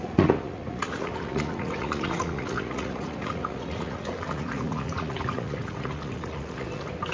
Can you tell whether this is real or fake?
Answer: fake